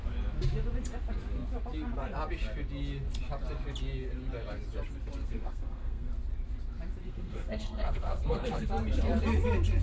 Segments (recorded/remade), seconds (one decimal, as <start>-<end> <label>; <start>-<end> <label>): 0.0-5.2 recorded; 5.2-6.1 remade; 6.1-7.0 recorded; 7.0-8.7 remade; 8.7-9.8 recorded